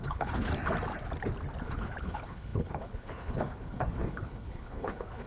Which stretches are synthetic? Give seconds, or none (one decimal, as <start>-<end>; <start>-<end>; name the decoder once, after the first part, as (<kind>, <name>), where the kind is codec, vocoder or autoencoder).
0.0-0.5 (codec, HILCodec); 1.6-5.3